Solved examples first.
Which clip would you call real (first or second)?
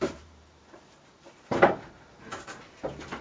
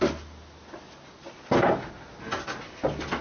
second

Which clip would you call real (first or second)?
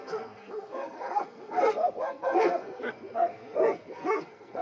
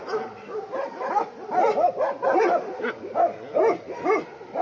second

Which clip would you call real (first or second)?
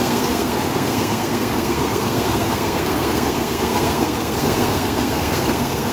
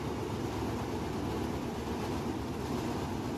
second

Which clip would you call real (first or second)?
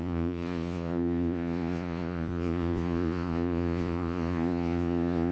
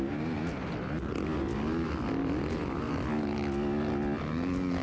second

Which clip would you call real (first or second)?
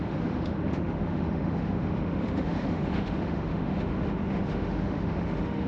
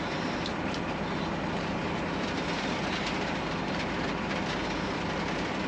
second